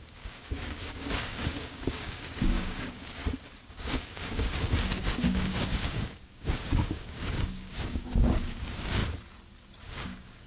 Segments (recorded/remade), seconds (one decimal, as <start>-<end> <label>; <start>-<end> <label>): 0.0-3.2 remade; 3.2-3.7 recorded; 3.7-9.0 remade; 9.0-9.8 recorded; 9.8-10.5 remade